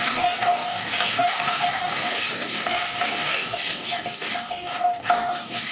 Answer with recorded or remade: remade